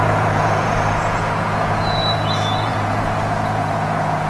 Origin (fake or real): fake